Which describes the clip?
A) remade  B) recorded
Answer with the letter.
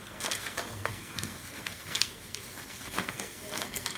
A